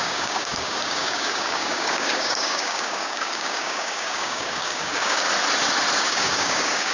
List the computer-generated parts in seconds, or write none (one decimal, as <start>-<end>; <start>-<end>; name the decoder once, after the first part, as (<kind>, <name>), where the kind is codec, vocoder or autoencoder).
0.0-5.3 (codec, DAC); 6.0-6.9